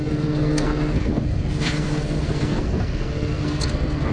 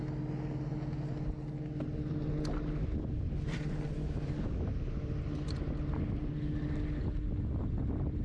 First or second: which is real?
second